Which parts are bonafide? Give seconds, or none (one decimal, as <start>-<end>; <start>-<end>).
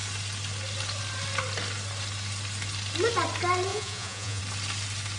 0.0-3.7; 4.4-5.2